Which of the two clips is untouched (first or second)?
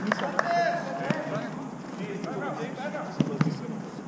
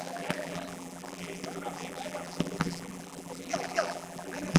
first